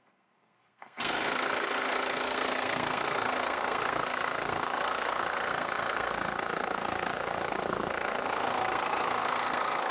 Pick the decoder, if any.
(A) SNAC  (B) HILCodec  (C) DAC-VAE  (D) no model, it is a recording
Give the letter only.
A